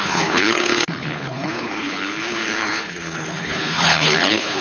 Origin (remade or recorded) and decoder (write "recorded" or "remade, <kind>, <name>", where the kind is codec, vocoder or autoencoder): remade, codec, HILCodec